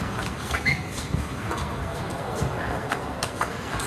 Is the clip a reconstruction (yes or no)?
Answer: yes